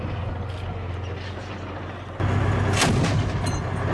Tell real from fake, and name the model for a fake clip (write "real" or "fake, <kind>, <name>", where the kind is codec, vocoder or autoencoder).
real